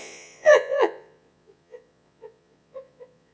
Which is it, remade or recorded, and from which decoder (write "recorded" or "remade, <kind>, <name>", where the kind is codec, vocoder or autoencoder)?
remade, vocoder, Vocos